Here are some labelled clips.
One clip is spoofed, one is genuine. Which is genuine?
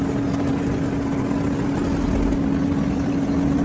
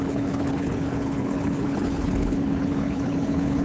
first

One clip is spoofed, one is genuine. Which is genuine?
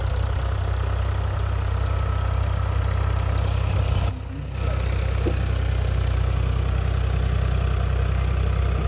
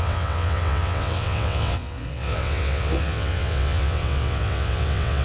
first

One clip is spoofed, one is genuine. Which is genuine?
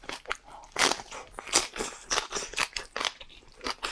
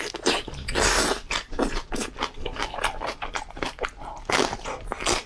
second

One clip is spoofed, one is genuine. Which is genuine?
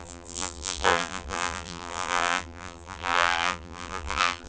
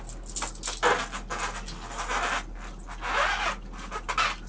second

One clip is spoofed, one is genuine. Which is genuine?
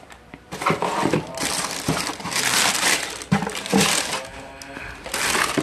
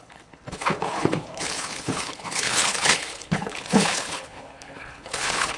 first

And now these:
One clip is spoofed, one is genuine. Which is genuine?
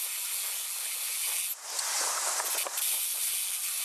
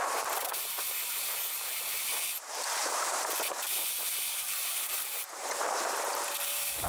first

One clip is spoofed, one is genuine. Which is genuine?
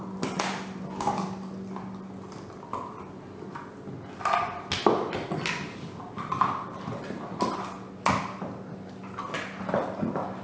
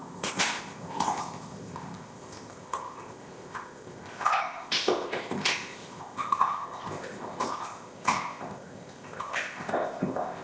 first